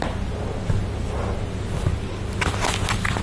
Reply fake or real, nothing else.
real